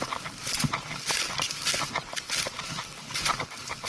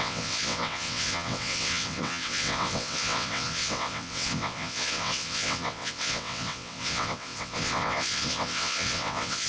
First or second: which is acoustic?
first